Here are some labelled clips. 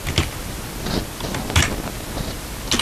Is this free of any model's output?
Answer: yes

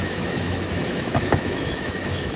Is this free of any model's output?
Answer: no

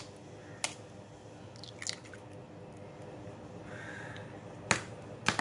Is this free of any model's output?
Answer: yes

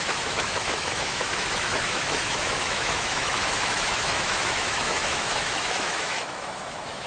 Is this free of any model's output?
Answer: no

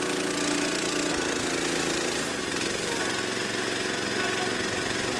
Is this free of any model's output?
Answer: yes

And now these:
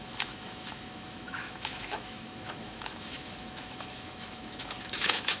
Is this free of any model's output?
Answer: no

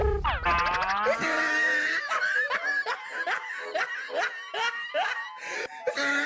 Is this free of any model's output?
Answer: yes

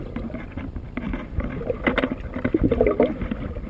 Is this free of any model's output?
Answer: yes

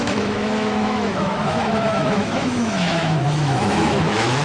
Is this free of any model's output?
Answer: no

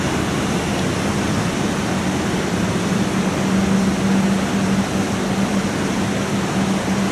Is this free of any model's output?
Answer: yes